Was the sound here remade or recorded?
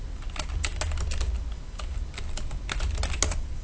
recorded